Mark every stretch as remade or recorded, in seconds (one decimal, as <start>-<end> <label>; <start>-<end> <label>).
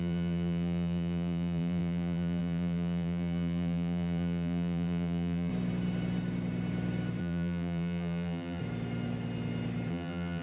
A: 0.0-5.5 remade; 5.5-7.2 recorded; 7.2-8.6 remade; 8.6-9.9 recorded; 9.9-10.4 remade